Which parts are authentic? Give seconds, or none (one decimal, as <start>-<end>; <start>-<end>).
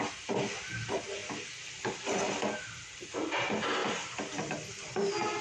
0.0-5.4